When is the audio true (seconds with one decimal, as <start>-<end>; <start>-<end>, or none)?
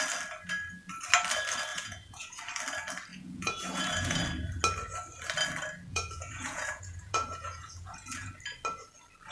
0.0-1.7; 2.4-3.1; 4.2-5.9; 8.3-9.3